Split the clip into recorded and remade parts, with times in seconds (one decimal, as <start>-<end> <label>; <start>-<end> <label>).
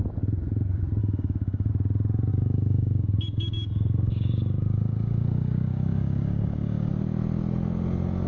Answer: 0.0-1.0 recorded; 1.0-1.7 remade; 1.7-2.3 recorded; 2.3-6.9 remade; 6.9-8.3 recorded